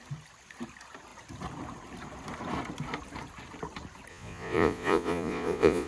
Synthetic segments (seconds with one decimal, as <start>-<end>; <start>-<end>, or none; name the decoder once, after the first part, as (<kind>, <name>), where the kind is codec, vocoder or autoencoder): 4.1-5.9 (vocoder, Vocos)